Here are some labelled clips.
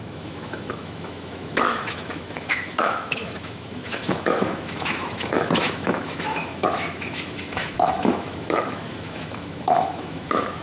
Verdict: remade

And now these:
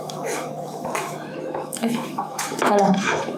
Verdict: remade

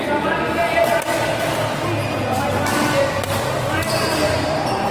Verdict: recorded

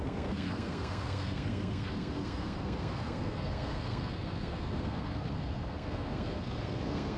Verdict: remade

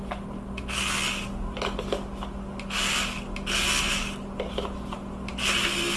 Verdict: recorded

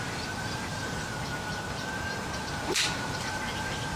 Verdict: remade